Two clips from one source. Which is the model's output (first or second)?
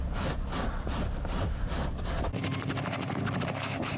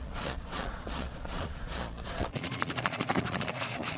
second